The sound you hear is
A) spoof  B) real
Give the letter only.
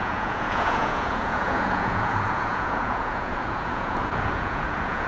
A